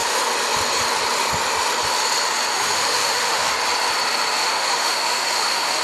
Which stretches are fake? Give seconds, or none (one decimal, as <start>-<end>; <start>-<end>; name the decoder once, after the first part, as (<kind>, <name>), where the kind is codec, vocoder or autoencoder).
2.5-3.5 (autoencoder, DAC-VAE); 4.4-5.8